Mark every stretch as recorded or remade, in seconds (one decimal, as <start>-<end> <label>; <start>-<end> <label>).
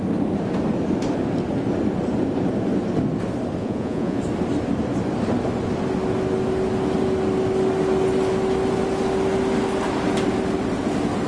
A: 0.0-3.6 recorded; 3.6-4.2 remade; 4.2-11.3 recorded